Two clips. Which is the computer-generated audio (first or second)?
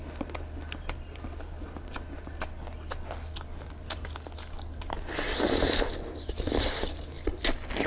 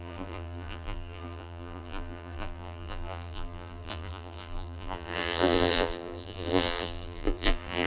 second